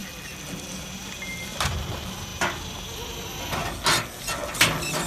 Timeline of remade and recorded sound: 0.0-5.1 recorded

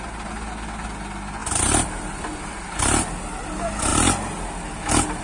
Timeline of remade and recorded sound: 0.0-1.4 recorded; 1.4-3.4 remade; 3.4-5.2 recorded

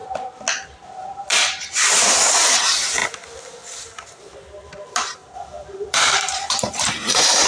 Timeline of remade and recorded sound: 0.0-1.9 recorded; 1.9-3.0 remade; 3.0-4.8 recorded; 4.8-7.5 remade

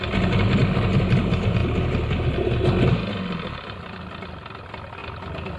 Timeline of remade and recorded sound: 0.0-5.6 recorded

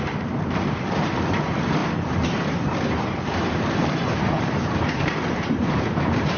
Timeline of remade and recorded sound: 0.0-6.4 remade

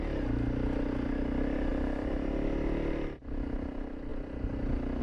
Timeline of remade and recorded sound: 0.0-5.0 recorded

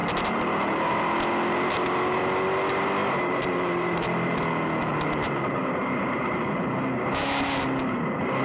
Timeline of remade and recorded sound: 0.0-3.0 recorded; 3.0-4.4 remade; 4.4-4.9 recorded; 4.9-5.7 remade; 5.7-8.4 recorded

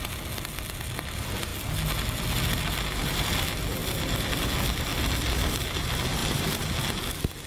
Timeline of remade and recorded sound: 0.0-3.8 recorded; 3.8-4.3 remade; 4.3-6.2 recorded; 6.2-6.8 remade; 6.8-7.5 recorded